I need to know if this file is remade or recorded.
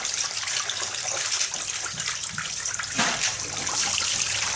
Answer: remade